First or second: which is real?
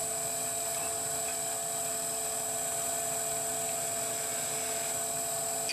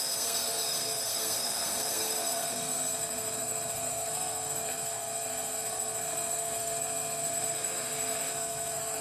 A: first